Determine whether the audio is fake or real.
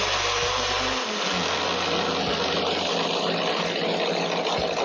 real